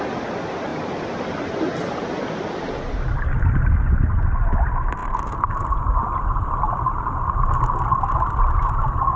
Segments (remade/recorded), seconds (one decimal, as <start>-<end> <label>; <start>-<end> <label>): 0.0-9.2 recorded